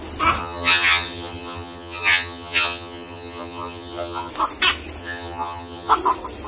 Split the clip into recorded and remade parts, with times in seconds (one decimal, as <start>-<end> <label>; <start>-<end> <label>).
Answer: 0.0-0.4 recorded; 0.4-4.3 remade; 4.3-5.0 recorded; 5.0-5.9 remade; 5.9-6.5 recorded